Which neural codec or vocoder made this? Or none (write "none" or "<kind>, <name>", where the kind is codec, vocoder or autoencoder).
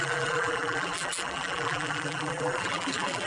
vocoder, BigVGAN v2